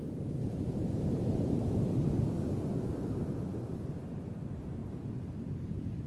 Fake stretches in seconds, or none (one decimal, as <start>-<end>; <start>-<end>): 0.4-2.1; 4.8-6.1